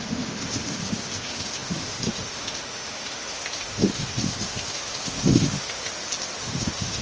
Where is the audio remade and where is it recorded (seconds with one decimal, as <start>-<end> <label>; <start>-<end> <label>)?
0.0-5.9 remade; 5.9-6.4 recorded; 6.4-7.0 remade